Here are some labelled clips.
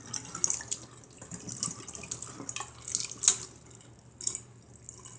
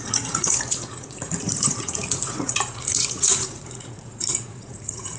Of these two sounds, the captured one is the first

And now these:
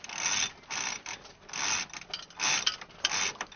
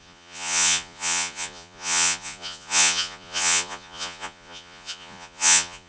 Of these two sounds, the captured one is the first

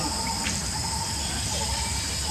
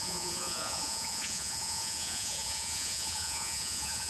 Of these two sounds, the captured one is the first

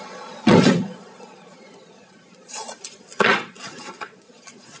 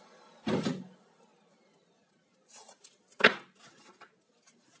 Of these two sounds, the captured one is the second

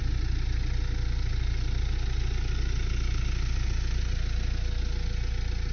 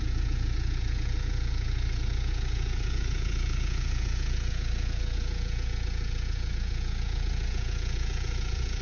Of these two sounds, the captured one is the first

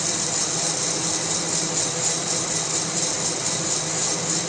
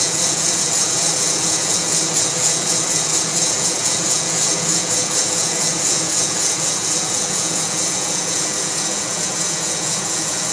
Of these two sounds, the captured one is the first